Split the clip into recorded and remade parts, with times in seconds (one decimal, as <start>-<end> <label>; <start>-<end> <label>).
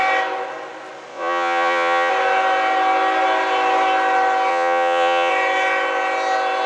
0.0-1.1 recorded; 1.1-2.1 remade; 2.1-4.5 recorded; 4.5-5.3 remade; 5.3-6.7 recorded